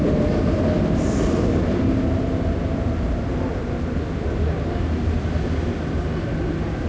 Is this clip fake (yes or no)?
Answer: no